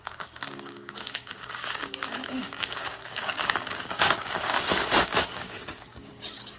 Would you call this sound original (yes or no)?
no